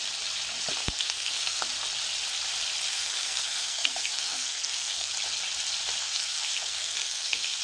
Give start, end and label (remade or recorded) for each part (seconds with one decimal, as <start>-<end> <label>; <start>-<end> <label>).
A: 0.0-0.8 recorded; 0.8-1.6 remade; 1.6-2.9 recorded; 2.9-5.1 remade; 5.1-6.0 recorded; 6.0-7.6 remade